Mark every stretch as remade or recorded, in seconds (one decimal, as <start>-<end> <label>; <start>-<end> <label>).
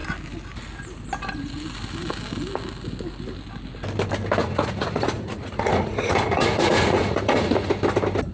0.0-4.4 recorded; 4.4-7.7 remade; 7.7-8.3 recorded